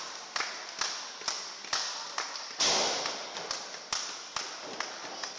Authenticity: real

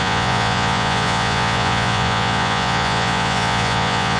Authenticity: fake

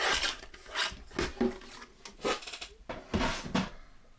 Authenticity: real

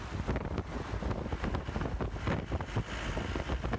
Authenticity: real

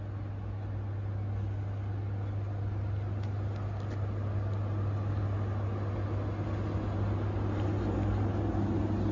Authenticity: real